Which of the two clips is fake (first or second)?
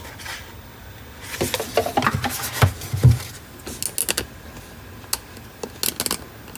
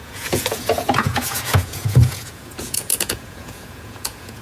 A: second